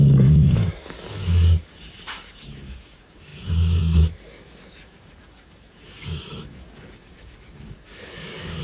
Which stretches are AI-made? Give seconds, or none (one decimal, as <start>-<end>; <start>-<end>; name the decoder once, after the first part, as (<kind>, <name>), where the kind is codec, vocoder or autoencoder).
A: 0.0-8.6 (codec, DAC)